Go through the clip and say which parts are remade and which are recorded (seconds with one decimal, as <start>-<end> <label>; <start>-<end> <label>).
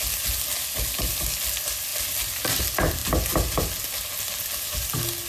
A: 0.0-5.3 recorded